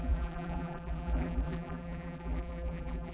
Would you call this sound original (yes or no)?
no